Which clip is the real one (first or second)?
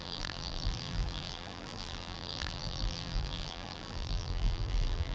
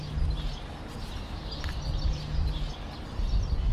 second